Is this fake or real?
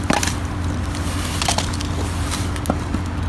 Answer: real